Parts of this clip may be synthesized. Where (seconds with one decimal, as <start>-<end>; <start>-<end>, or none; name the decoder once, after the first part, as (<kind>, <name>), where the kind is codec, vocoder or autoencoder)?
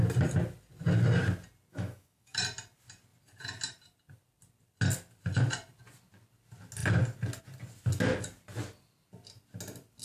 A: 1.7-2.4 (autoencoder, DAC-VAE)